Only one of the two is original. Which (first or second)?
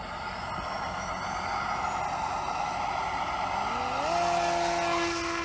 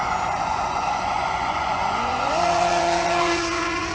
first